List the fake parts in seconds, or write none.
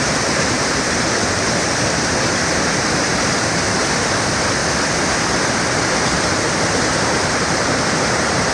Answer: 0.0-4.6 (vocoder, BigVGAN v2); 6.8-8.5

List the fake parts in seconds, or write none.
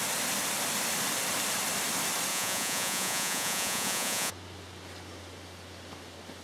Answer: 2.3-4.3 (vocoder, Vocos)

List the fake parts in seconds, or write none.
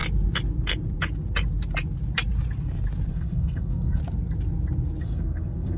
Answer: 3.1-4.0 (codec, SNAC); 5.0-5.8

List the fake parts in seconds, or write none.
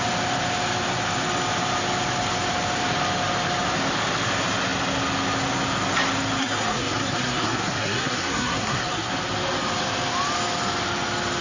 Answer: 6.4-9.1 (codec, SNAC)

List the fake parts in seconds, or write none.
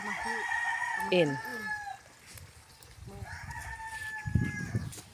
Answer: none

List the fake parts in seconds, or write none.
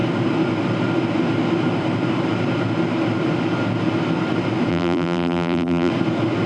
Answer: 4.7-5.9 (vocoder, BigVGAN v2)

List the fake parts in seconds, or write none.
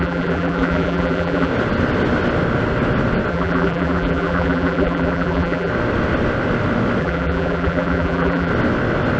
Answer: 0.0-1.5 (vocoder, BigVGAN v2); 3.3-5.7; 7.0-8.5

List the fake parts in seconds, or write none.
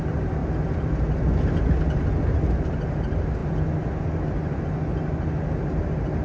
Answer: none